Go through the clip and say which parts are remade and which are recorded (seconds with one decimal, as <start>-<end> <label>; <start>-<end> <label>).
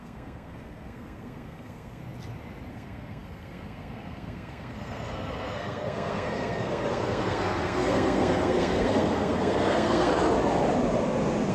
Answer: 0.0-2.0 remade; 2.0-2.7 recorded; 2.7-10.1 remade; 10.1-11.5 recorded